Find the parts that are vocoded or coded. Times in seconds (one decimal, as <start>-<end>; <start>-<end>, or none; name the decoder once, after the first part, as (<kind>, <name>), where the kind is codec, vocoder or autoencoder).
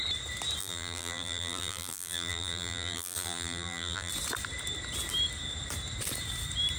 0.6-4.1 (vocoder, BigVGAN v2)